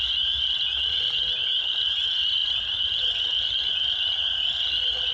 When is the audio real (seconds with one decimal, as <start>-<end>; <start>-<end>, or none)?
0.0-5.1